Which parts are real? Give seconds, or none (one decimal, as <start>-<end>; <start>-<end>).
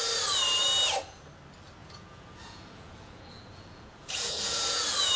0.0-1.8